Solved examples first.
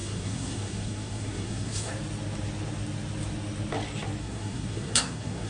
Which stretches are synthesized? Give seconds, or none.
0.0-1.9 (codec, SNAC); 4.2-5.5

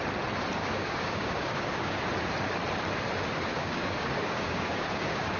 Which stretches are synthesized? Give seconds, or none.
0.6-2.0 (codec, DAC); 3.5-5.4

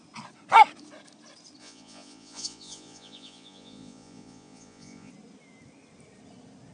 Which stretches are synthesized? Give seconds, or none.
1.6-5.1 (vocoder, Vocos)

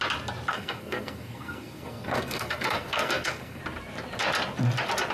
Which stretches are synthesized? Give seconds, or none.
0.5-3.6 (codec, SNAC)

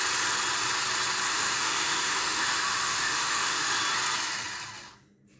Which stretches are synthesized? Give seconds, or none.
1.3-3.8 (autoencoder, DAC-VAE)